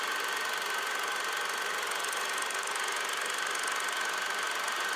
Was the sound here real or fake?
real